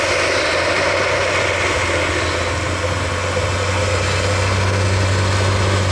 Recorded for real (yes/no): yes